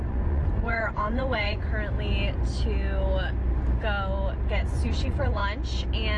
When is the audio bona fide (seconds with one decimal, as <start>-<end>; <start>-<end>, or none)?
1.7-4.5; 5.4-6.2